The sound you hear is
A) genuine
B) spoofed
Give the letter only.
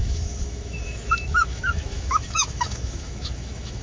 B